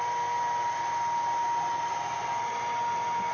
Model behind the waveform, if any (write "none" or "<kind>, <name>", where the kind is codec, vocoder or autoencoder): none